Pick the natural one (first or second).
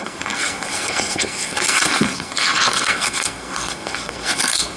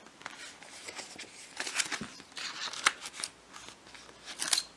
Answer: second